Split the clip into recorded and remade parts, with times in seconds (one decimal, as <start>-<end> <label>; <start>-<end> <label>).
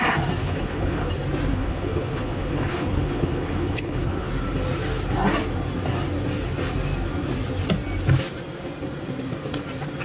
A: 0.0-0.4 recorded; 0.4-1.1 remade; 1.1-1.5 recorded; 1.5-4.3 remade; 4.3-10.0 recorded